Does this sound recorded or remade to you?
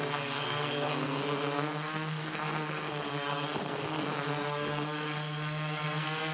remade